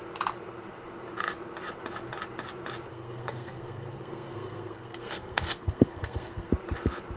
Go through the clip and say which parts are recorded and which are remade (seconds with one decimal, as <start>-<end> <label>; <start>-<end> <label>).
0.0-2.9 recorded; 2.9-6.5 remade; 6.5-7.2 recorded